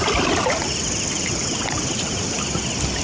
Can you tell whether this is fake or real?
real